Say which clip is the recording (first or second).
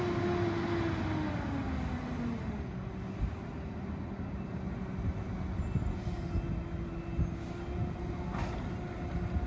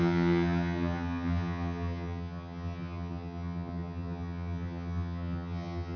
first